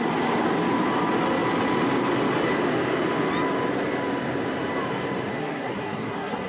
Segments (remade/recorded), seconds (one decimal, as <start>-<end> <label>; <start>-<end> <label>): 0.0-5.4 recorded; 5.4-6.5 remade